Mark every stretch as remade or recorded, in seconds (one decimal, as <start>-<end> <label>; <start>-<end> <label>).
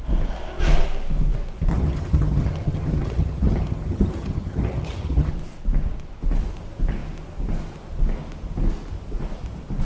0.0-1.7 recorded; 1.7-5.3 remade; 5.3-9.8 recorded